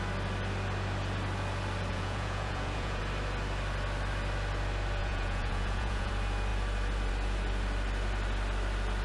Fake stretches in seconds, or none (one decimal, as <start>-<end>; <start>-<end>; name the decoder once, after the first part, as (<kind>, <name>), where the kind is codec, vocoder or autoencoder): 1.9-3.0 (vocoder, Vocos); 5.0-6.1